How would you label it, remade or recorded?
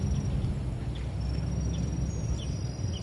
recorded